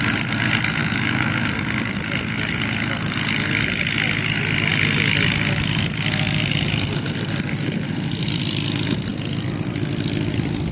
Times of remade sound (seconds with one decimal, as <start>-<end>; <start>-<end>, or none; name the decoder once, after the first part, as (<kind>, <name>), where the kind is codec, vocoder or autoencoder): 0.8-1.5 (autoencoder, DAC-VAE)